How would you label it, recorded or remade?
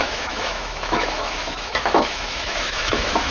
remade